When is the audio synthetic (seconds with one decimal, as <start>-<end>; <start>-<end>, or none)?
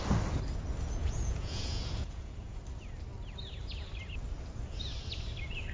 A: 1.0-2.6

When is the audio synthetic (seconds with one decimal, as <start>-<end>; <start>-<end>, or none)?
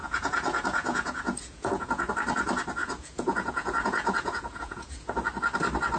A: 0.0-2.1; 2.8-5.1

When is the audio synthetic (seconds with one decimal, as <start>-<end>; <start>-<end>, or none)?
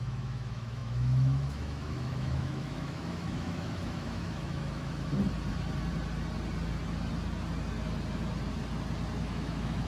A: 0.0-5.1; 9.2-9.9